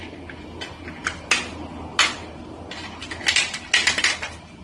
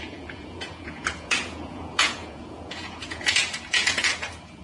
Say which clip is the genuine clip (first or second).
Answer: first